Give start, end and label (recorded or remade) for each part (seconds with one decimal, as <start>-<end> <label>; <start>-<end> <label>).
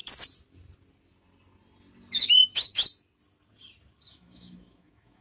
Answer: 0.0-2.2 recorded; 2.2-2.8 remade; 2.8-4.1 recorded; 4.1-5.2 remade